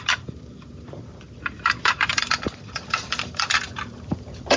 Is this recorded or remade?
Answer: remade